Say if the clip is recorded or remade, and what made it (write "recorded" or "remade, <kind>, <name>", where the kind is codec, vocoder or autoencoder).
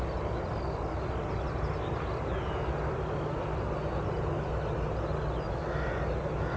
recorded